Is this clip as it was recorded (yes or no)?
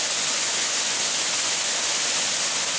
no